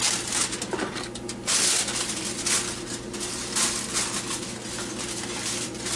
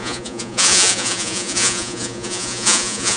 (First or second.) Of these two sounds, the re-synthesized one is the second